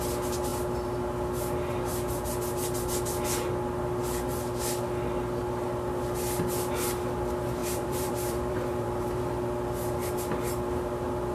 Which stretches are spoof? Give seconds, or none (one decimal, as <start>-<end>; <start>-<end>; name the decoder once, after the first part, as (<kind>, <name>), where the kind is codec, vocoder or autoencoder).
7.6-9.2 (vocoder, BigVGAN v2)